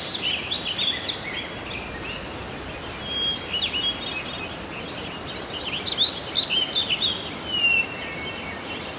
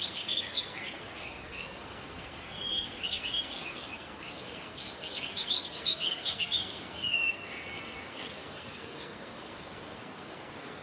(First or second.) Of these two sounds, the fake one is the second